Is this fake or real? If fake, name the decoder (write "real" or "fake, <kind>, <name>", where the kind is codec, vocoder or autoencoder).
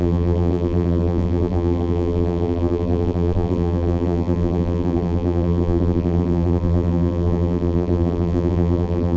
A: fake, vocoder, BigVGAN v2